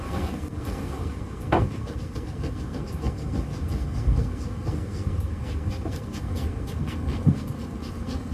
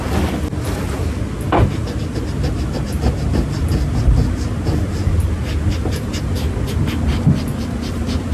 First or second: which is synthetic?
first